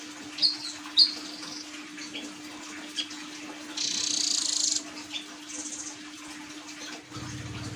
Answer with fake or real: real